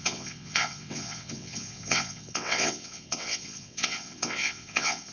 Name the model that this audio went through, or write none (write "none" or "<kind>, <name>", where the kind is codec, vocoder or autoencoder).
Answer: vocoder, WaveNeXt